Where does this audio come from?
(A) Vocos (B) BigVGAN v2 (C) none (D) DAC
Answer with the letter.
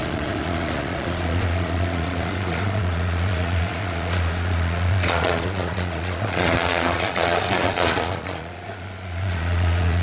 A